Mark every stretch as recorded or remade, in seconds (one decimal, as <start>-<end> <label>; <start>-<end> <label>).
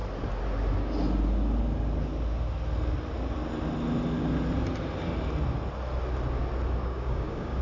0.0-6.8 recorded; 6.8-7.6 remade